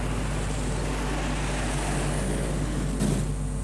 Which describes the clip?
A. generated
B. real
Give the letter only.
B